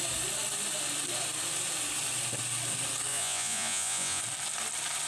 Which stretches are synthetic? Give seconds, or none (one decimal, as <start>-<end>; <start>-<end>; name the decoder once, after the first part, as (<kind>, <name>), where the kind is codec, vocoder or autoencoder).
3.1-4.2 (vocoder, Vocos)